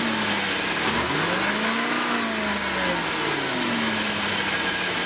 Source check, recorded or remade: recorded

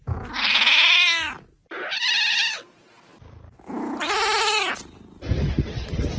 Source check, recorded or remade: recorded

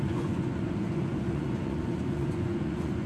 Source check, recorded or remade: remade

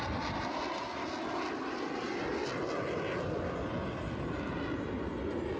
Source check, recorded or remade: recorded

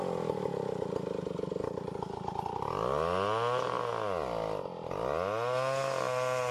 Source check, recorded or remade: recorded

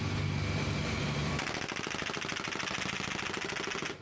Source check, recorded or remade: recorded